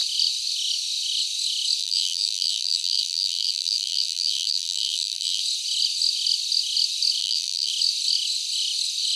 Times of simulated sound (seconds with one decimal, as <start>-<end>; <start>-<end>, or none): 1.8-5.4; 7.2-7.7